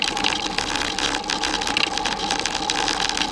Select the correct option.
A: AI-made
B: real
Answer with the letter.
B